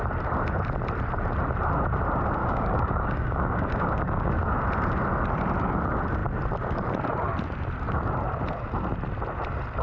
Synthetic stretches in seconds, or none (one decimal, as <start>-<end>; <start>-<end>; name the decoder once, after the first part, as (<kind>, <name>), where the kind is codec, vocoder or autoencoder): 2.4-4.3 (codec, DAC)